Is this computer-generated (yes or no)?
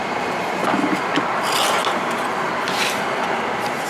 no